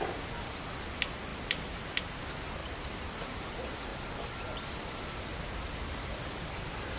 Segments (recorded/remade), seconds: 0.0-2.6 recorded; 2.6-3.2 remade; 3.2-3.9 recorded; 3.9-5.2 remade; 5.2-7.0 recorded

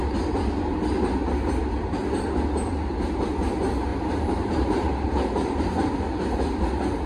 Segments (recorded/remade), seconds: 0.0-3.9 recorded; 3.9-5.9 remade; 5.9-7.1 recorded

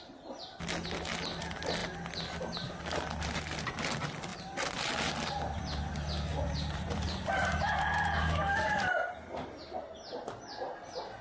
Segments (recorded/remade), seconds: 0.0-6.3 recorded; 6.3-9.1 remade; 9.1-11.2 recorded

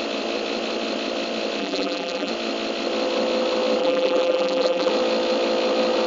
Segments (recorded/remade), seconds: 0.0-1.6 recorded; 1.6-2.3 remade; 2.3-3.8 recorded; 3.8-4.9 remade; 4.9-6.1 recorded